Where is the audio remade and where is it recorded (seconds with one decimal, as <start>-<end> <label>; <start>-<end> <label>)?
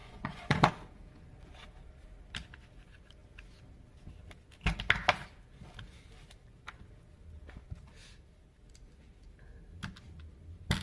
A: 0.0-0.7 remade; 0.7-10.8 recorded